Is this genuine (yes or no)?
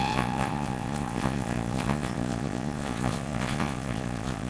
no